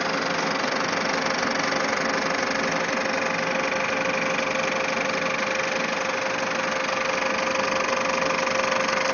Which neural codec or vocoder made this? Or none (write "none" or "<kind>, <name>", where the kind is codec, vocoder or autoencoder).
none